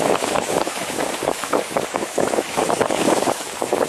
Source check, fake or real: fake